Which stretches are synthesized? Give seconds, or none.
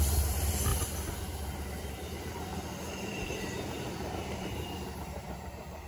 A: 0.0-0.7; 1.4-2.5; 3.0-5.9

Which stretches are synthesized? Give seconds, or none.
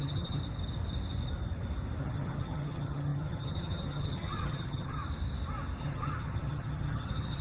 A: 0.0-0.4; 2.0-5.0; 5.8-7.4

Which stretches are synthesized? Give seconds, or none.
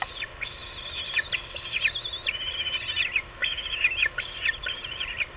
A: none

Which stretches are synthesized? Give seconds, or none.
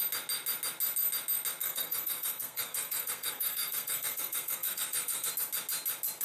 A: 1.6-5.3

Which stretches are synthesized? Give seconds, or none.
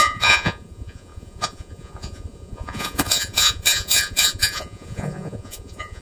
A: 0.0-6.0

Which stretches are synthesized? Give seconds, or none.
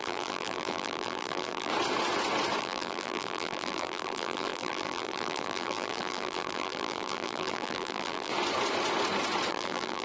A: 0.0-1.7; 2.6-8.3; 9.5-10.0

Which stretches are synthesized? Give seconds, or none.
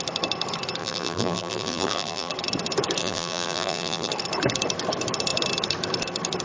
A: 0.8-2.3; 3.0-4.1